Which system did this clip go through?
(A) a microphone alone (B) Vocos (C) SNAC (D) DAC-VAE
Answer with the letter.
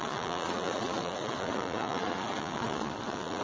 B